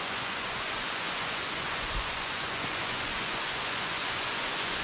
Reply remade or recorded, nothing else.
remade